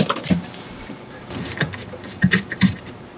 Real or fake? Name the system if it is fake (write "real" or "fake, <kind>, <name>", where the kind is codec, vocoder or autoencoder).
fake, vocoder, BigVGAN v2